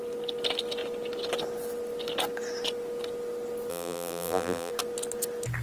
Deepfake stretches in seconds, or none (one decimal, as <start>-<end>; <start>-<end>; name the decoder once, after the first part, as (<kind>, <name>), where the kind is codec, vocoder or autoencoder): 3.7-4.7 (vocoder, BigVGAN v2)